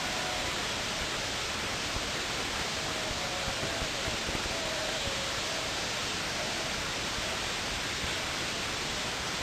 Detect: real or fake real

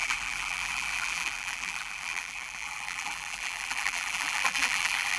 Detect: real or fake fake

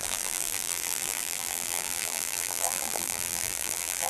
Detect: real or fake fake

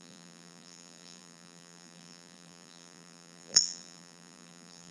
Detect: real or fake fake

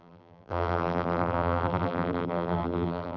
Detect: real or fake fake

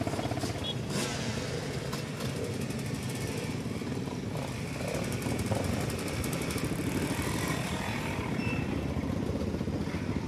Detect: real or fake fake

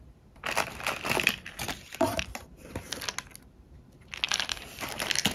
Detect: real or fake real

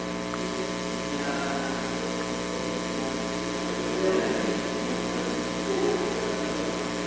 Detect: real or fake real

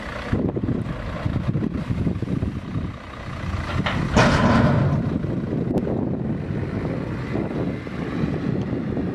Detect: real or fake real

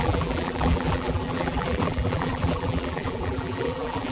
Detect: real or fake fake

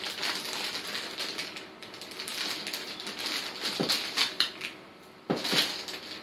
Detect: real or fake real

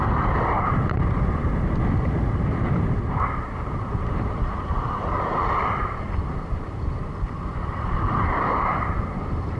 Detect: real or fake fake